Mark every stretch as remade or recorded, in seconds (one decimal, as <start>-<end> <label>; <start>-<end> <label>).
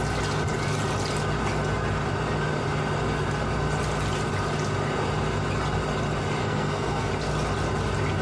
0.0-6.4 recorded; 6.4-7.1 remade; 7.1-8.2 recorded